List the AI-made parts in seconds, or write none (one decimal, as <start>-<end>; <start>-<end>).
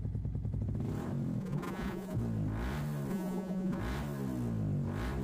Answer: 1.4-2.2; 3.1-3.8